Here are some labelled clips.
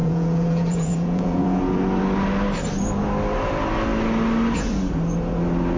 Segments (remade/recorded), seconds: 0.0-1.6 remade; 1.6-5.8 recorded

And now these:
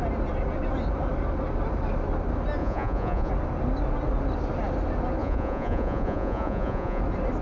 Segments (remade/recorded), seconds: 0.0-2.6 recorded; 2.6-3.3 remade; 3.3-5.2 recorded; 5.2-7.0 remade; 7.0-7.4 recorded

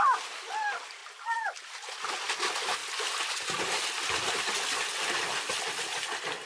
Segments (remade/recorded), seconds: 0.0-6.5 recorded

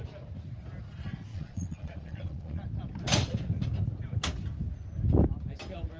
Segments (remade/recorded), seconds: 0.0-1.3 recorded; 1.3-2.6 remade; 2.6-6.0 recorded

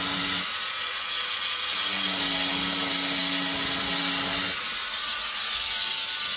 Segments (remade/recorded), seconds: 0.0-4.8 recorded; 4.8-5.5 remade; 5.5-6.4 recorded